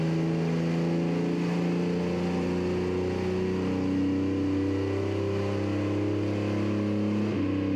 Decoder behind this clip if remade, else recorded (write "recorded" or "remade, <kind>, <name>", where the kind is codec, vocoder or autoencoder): recorded